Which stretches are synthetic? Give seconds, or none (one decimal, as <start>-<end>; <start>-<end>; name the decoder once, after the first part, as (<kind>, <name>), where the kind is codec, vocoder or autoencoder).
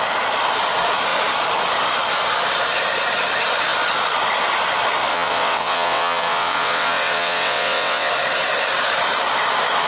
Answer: 5.1-8.1 (vocoder, WaveNeXt)